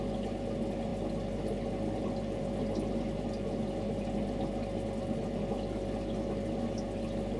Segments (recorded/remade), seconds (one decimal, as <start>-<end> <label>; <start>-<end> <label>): 0.0-7.4 recorded